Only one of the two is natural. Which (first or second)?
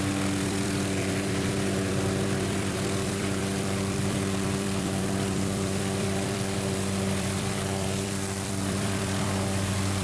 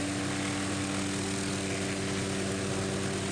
second